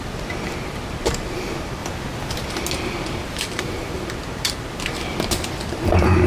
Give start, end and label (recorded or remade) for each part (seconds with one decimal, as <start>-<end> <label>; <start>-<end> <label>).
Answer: 0.0-1.8 remade; 1.8-3.4 recorded; 3.4-5.1 remade; 5.1-5.7 recorded; 5.7-6.3 remade